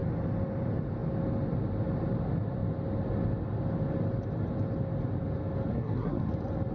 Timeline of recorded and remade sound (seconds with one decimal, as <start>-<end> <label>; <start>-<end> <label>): 0.0-5.7 recorded; 5.7-6.3 remade; 6.3-6.7 recorded